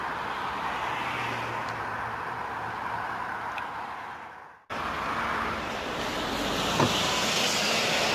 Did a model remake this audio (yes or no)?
no